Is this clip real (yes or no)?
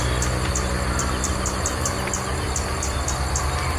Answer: yes